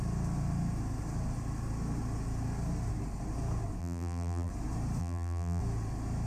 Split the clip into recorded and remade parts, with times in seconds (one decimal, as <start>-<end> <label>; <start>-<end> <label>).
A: 0.0-3.8 recorded; 3.8-4.5 remade; 4.5-5.0 recorded; 5.0-5.6 remade; 5.6-6.3 recorded